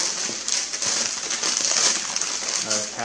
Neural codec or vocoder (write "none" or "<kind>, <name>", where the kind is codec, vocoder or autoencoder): none